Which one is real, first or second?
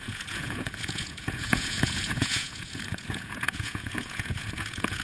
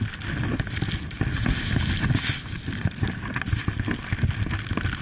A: second